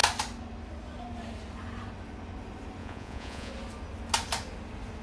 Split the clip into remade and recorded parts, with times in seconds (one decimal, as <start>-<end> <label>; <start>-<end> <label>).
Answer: 0.0-2.8 recorded; 2.8-3.5 remade; 3.5-5.0 recorded